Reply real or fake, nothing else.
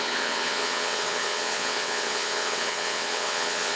fake